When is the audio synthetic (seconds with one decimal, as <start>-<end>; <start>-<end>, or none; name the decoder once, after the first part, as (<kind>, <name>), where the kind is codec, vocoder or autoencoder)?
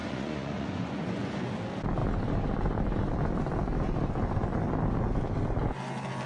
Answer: 0.0-1.5 (vocoder, Vocos)